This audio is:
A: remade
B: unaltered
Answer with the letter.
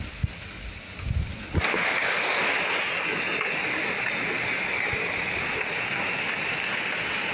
B